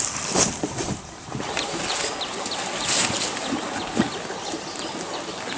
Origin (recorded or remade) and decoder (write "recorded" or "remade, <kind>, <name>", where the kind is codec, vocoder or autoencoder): recorded